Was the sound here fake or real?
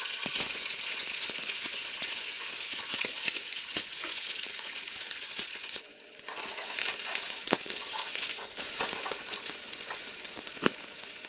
fake